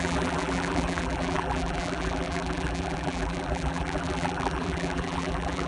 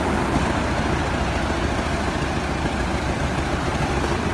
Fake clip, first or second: first